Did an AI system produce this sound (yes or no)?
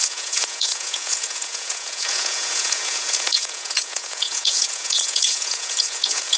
yes